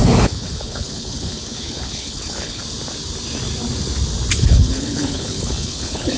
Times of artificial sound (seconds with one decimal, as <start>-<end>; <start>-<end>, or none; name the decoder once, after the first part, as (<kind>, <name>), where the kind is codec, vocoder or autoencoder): 0.0-2.6 (codec, HILCodec); 4.3-6.2